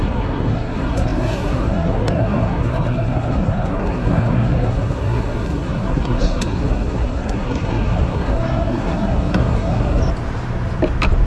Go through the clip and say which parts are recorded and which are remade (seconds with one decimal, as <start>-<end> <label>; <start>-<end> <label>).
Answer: 0.0-10.0 remade; 10.0-11.3 recorded

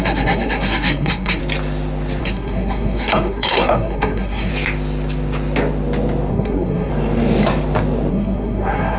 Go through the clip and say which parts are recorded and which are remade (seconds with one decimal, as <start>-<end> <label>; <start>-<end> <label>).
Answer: 0.0-1.4 remade; 1.4-2.2 recorded; 2.2-4.5 remade; 4.5-6.3 recorded; 6.3-6.9 remade; 6.9-8.1 recorded; 8.1-9.0 remade

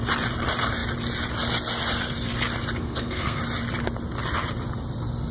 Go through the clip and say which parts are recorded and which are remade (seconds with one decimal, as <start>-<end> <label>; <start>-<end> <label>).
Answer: 0.0-2.8 recorded; 2.8-3.4 remade; 3.4-5.3 recorded

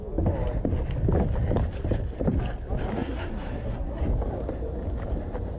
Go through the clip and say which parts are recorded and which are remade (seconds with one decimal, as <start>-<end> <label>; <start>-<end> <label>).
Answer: 0.0-2.9 recorded; 2.9-4.0 remade; 4.0-5.6 recorded